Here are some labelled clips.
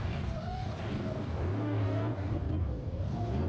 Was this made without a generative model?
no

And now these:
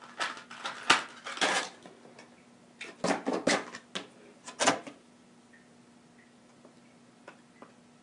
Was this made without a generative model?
yes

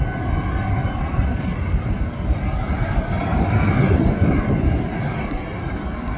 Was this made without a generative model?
yes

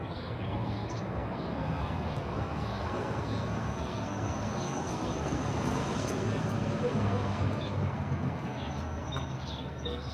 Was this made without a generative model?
no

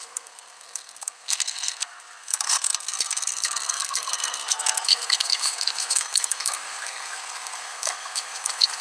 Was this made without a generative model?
no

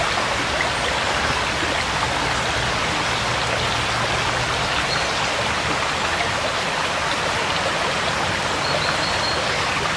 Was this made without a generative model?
yes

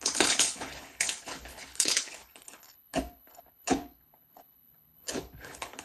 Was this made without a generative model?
no